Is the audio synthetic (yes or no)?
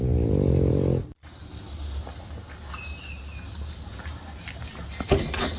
no